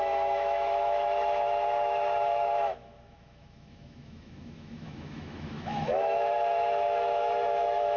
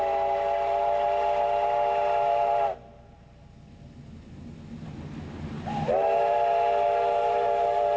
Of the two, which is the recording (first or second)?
second